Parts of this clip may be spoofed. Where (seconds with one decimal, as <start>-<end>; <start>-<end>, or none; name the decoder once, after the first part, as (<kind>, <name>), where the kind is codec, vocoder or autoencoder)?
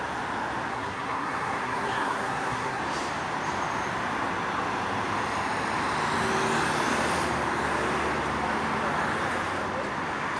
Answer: 0.7-2.8 (codec, SNAC)